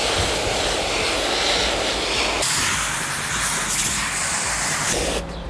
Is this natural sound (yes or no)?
yes